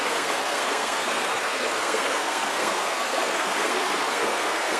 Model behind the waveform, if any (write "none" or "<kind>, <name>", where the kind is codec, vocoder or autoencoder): codec, SNAC